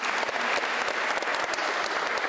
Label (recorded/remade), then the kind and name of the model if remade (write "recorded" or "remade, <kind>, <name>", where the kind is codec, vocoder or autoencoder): recorded